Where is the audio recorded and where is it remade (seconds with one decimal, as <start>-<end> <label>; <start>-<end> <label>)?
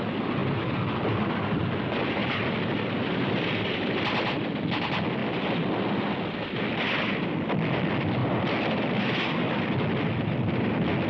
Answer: 0.0-0.4 recorded; 0.4-1.1 remade; 1.1-2.2 recorded; 2.2-4.0 remade; 4.0-5.2 recorded; 5.2-5.9 remade; 5.9-8.2 recorded; 8.2-10.7 remade; 10.7-11.1 recorded